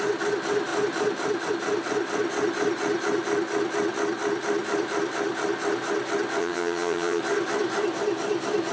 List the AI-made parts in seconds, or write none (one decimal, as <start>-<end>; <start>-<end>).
6.4-7.2

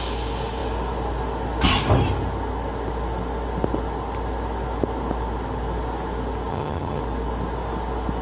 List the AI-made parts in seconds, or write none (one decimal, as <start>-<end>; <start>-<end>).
6.5-7.0

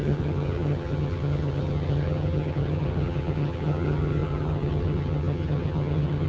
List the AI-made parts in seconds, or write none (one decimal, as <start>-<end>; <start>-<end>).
0.0-6.3

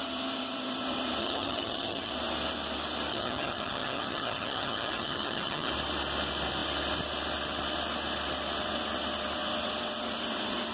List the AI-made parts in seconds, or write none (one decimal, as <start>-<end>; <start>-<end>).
1.2-2.1; 3.1-5.7

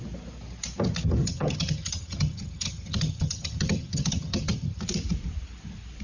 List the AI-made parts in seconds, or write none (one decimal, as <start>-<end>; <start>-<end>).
1.2-4.8

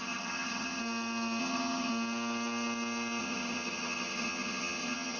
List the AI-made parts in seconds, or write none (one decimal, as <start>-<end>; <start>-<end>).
0.0-0.8; 1.4-1.9; 3.2-5.2